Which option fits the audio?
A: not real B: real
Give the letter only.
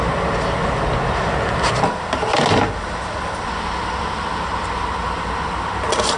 B